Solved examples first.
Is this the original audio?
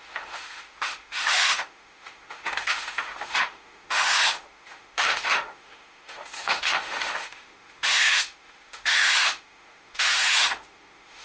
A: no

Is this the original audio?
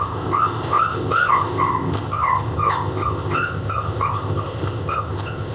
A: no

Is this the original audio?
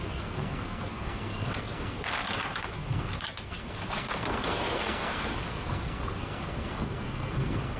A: no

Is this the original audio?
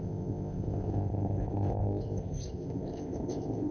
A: no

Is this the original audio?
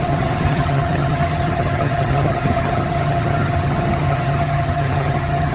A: no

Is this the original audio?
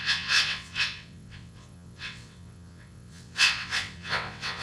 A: no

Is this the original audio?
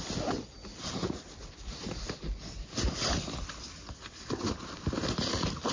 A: yes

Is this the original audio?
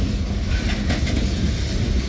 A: yes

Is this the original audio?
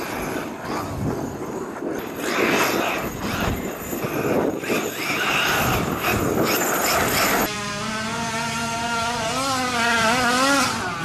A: yes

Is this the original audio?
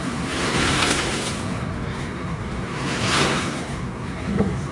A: no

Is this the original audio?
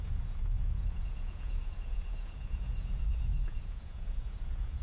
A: no